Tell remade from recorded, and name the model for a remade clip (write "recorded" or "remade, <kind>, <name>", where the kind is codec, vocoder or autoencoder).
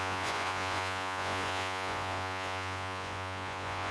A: remade, vocoder, Vocos